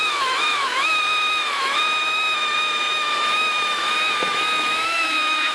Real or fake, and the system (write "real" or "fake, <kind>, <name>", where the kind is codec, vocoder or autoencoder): fake, autoencoder, DAC-VAE